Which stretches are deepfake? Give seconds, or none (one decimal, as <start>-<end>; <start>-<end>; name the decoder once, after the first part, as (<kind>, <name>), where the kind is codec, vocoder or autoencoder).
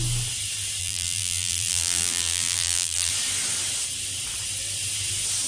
0.8-3.1 (vocoder, BigVGAN v2)